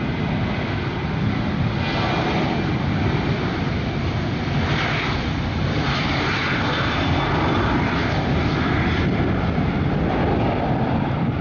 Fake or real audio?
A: real